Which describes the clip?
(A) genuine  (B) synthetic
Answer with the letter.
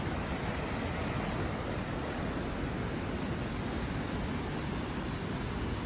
A